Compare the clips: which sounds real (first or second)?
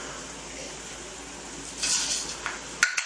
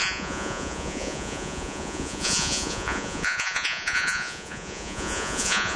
first